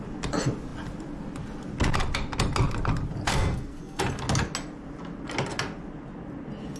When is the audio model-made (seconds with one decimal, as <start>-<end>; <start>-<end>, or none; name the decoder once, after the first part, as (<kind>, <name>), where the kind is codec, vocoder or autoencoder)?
3.3-4.0 (codec, SNAC)